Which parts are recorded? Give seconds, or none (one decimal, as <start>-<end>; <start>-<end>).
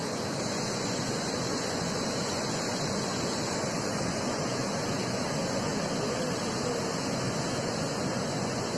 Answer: 5.7-6.8